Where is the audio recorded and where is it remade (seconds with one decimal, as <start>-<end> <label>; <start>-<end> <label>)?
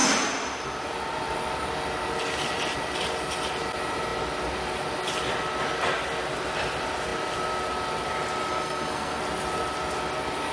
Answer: 0.0-8.5 recorded; 8.5-9.2 remade; 9.2-10.5 recorded